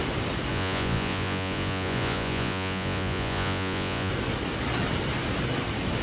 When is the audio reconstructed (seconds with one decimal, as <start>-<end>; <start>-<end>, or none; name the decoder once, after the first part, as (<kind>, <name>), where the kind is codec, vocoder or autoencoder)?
0.5-4.1 (vocoder, Vocos)